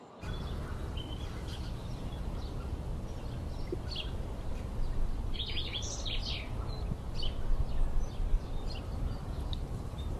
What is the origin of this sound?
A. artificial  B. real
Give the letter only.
B